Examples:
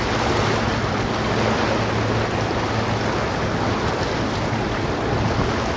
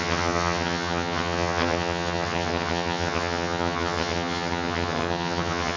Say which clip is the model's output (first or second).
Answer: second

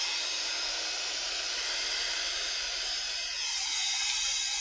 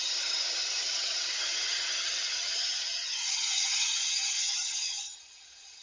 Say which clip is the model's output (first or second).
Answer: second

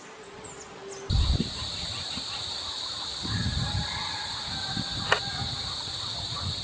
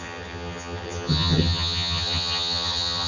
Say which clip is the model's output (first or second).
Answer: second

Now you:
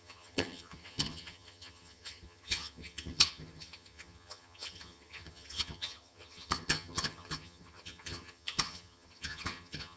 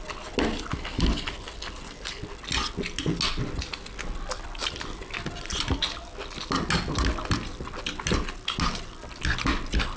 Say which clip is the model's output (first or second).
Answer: first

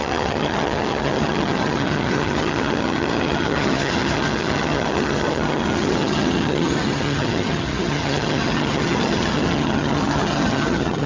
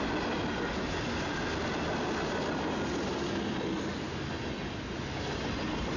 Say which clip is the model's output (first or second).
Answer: first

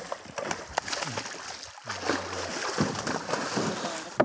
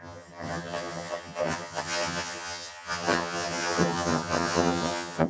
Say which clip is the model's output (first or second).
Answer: second